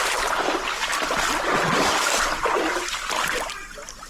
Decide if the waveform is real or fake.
real